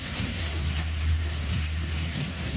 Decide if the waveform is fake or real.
fake